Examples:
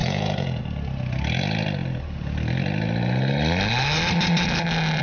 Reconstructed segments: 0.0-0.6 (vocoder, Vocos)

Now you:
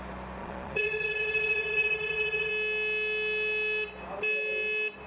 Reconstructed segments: 0.4-2.5 (vocoder, Vocos)

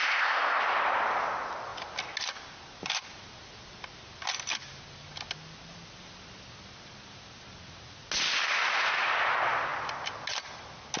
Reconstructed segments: 0.0-0.6 (codec, ZipCodec)

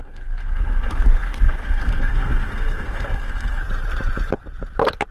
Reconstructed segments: 0.0-3.6 (codec, SNAC)